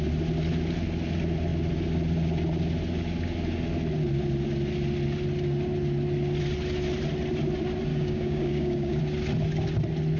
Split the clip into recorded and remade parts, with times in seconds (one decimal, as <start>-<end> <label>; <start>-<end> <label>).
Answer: 0.0-7.9 recorded; 7.9-9.0 remade; 9.0-10.2 recorded